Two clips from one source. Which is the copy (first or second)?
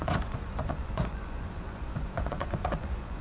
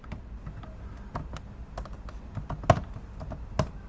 first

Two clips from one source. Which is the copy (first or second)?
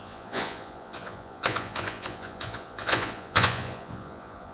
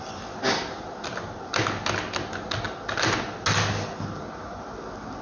first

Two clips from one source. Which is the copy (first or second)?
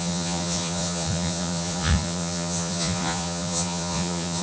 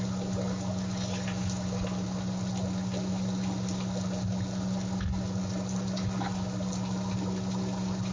first